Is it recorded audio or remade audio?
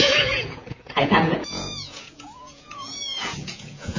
remade